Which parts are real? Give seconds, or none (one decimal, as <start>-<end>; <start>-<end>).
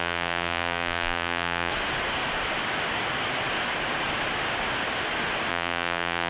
1.7-5.5